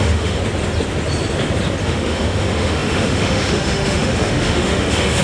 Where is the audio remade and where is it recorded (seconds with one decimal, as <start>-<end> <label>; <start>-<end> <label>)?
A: 0.0-0.4 remade; 0.4-1.8 recorded; 1.8-5.2 remade

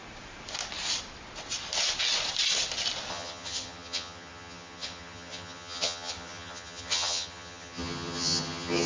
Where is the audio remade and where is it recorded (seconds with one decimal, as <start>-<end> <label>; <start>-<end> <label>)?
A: 0.0-3.1 recorded; 3.1-8.9 remade

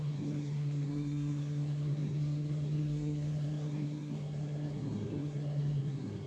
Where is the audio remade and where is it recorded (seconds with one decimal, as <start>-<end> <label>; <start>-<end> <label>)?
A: 0.0-6.3 remade

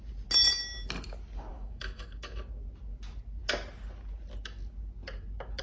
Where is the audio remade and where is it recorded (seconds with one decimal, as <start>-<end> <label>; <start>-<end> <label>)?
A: 0.0-1.5 recorded; 1.5-2.4 remade; 2.4-5.6 recorded

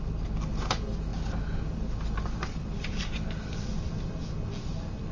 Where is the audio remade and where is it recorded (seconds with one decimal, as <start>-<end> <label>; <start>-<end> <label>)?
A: 0.0-5.1 recorded